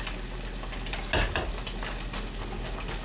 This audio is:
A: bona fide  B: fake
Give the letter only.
A